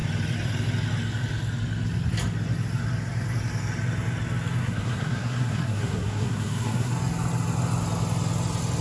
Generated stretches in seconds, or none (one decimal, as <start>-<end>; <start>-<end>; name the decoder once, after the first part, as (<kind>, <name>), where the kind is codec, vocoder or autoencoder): 4.6-6.9 (codec, SNAC)